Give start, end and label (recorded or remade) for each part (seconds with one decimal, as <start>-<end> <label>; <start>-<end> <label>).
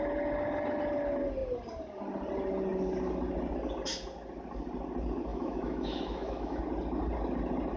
0.0-5.3 recorded; 5.3-6.6 remade; 6.6-7.8 recorded